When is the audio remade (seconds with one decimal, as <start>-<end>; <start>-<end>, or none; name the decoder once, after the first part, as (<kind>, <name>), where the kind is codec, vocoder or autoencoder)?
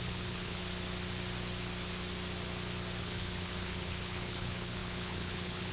0.0-0.6 (codec, HILCodec); 3.0-5.7